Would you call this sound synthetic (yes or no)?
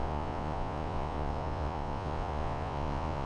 yes